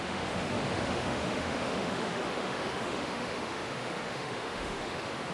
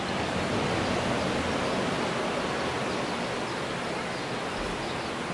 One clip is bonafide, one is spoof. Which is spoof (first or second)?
first